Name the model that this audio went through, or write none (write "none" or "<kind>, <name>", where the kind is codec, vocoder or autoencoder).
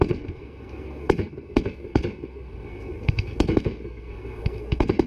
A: codec, SNAC